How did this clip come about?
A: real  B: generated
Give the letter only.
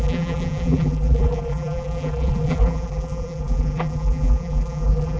B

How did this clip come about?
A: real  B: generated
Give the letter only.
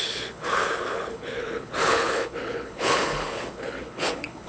B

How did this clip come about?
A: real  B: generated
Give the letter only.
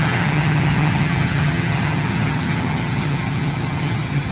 B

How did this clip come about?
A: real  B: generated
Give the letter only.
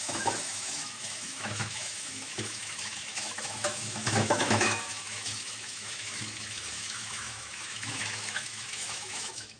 B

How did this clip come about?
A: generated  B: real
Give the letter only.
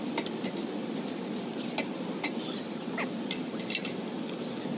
B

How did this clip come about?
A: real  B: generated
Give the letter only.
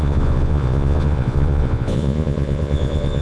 B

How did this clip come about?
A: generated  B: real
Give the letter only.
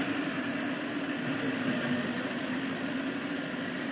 B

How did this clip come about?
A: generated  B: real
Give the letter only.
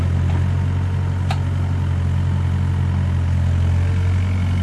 B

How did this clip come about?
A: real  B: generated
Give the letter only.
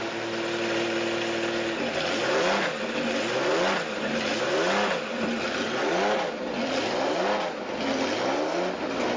A